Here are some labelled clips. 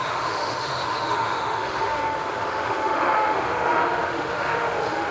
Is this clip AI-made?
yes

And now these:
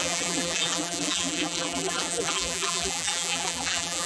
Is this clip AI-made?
yes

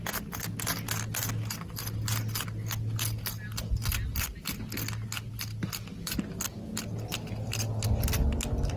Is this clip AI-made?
no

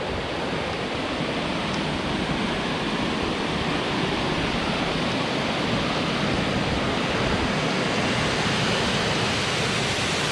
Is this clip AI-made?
no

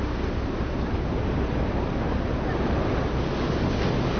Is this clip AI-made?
no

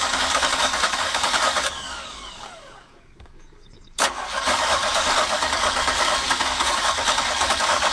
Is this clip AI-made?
yes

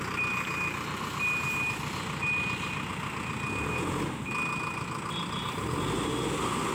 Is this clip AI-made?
no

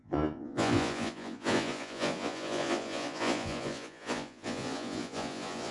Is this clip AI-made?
yes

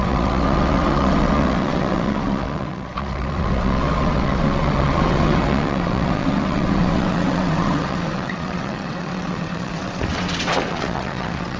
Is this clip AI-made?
yes